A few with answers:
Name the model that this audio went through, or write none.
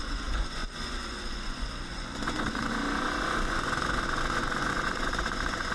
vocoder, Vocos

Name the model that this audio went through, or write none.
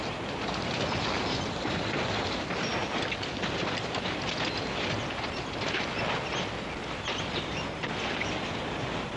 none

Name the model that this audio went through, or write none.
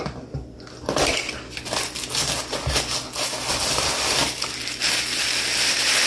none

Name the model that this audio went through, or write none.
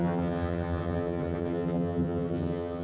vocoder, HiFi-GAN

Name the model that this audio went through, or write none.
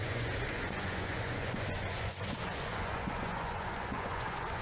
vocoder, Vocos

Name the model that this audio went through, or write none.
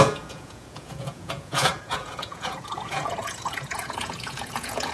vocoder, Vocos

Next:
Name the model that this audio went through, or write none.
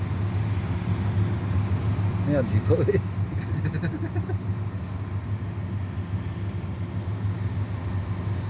none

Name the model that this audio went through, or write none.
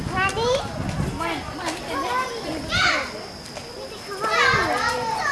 none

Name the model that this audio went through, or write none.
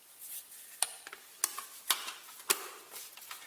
none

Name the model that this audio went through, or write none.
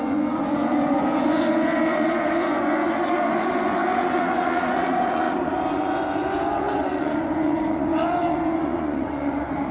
vocoder, Vocos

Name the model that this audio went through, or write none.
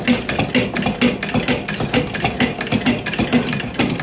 none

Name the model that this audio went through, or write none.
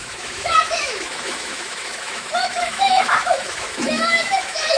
autoencoder, DAC-VAE